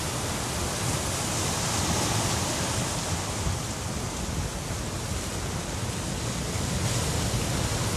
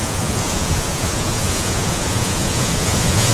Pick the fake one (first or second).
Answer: second